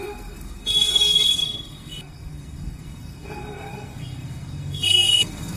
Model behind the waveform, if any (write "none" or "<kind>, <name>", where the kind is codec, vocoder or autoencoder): codec, SNAC